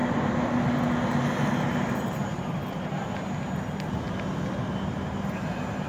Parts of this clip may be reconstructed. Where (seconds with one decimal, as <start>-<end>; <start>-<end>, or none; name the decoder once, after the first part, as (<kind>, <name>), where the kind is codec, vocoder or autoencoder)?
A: 1.9-2.6 (vocoder, BigVGAN v2); 5.0-5.9